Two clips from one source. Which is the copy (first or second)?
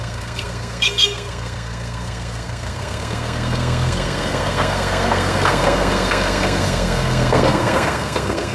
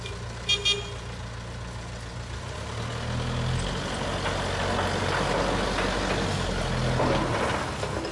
first